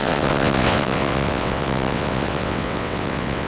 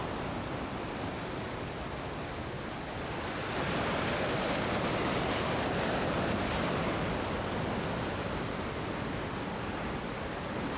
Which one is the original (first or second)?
second